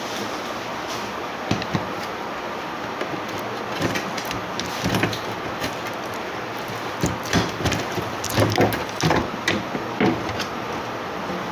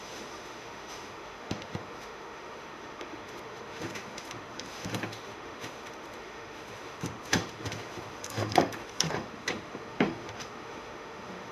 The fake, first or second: second